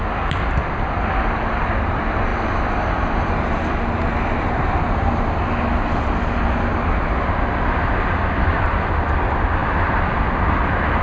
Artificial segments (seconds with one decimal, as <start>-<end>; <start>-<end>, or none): none